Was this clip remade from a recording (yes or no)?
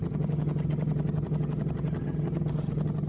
yes